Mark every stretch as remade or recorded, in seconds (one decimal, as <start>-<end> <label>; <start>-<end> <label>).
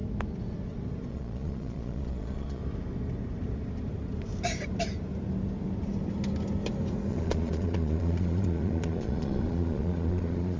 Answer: 0.0-1.1 recorded; 1.1-2.6 remade; 2.6-7.1 recorded; 7.1-10.6 remade